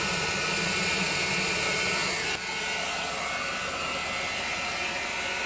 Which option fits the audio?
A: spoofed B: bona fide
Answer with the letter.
B